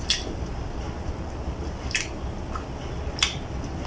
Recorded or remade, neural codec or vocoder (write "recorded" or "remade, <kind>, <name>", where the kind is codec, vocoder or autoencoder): recorded